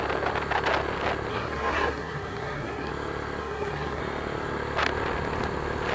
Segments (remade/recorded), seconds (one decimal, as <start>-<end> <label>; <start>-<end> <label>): 0.0-1.3 recorded; 1.3-2.9 remade; 2.9-3.4 recorded; 3.4-4.0 remade; 4.0-5.9 recorded